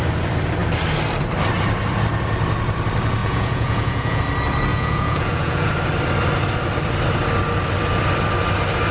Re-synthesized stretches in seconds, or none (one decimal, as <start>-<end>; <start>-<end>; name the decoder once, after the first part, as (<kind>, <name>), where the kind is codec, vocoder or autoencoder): 3.2-4.2 (vocoder, Vocos); 4.7-5.7